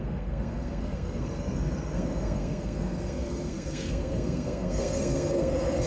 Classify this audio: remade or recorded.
remade